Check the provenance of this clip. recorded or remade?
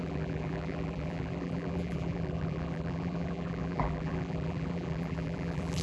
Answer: remade